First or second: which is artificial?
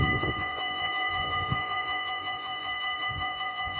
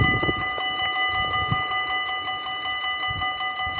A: first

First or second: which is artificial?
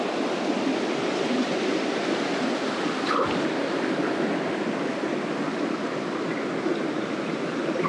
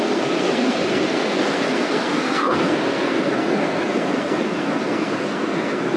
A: second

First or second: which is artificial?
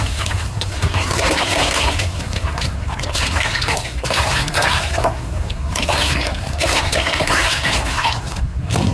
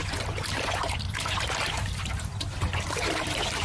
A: first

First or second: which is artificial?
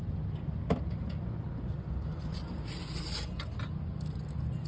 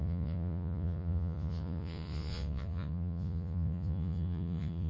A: second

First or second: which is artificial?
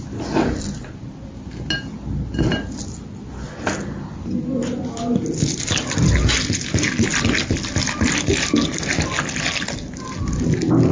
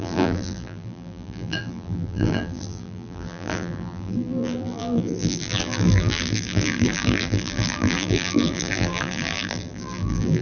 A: second